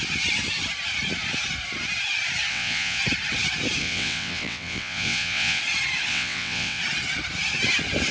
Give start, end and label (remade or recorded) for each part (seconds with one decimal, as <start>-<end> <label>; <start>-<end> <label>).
0.0-2.5 recorded; 2.5-3.0 remade; 3.0-3.8 recorded; 3.8-5.6 remade; 5.6-6.1 recorded; 6.1-6.8 remade; 6.8-8.1 recorded